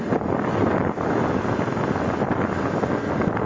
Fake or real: real